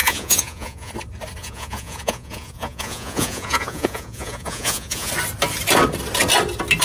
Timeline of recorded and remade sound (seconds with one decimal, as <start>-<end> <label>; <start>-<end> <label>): 0.0-0.9 remade; 0.9-1.4 recorded; 1.4-5.1 remade; 5.1-6.8 recorded